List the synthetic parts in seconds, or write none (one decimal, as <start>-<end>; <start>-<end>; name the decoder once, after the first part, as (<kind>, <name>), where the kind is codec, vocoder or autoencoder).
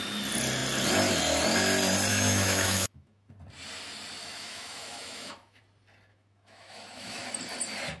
2.1-3.3 (autoencoder, DAC-VAE); 4.2-5.6; 6.1-7.2